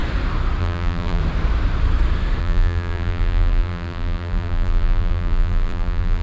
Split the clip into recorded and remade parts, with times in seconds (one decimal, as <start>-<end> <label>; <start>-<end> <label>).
0.0-0.6 recorded; 0.6-1.2 remade; 1.2-2.4 recorded; 2.4-6.2 remade